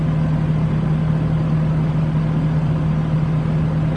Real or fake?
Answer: real